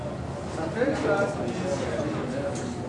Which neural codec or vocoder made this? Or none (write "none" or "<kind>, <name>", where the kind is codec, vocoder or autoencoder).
none